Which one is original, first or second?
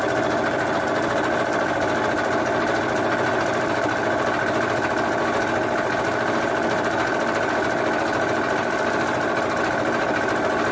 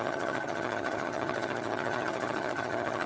first